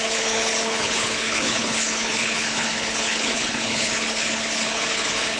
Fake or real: fake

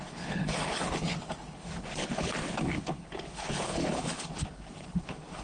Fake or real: fake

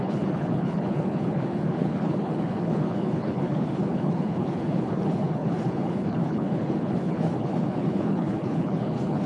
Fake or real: fake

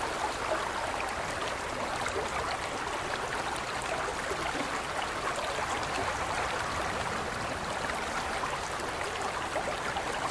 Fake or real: real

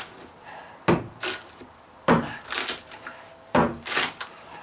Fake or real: real